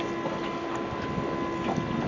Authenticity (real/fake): real